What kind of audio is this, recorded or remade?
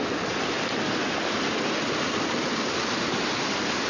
recorded